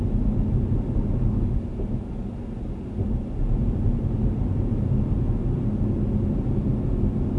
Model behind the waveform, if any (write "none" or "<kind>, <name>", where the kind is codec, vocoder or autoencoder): none